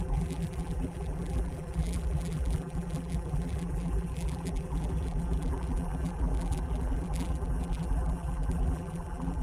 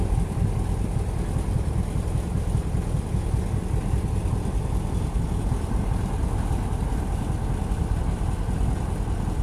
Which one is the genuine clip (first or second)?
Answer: second